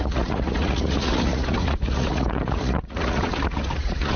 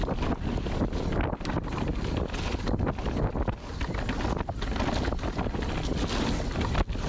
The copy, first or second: first